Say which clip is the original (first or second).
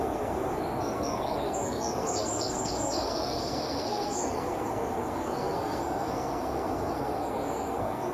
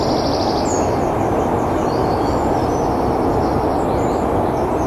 second